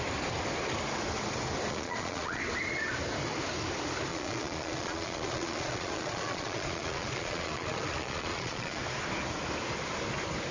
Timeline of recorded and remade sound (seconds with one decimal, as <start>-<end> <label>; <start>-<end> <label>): 0.0-1.7 recorded; 1.7-2.4 remade; 2.4-4.1 recorded; 4.1-8.8 remade; 8.8-10.5 recorded